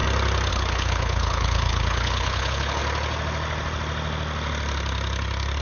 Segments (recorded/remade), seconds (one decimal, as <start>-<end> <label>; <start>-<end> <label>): 0.0-0.5 recorded; 0.5-2.8 remade; 2.8-5.6 recorded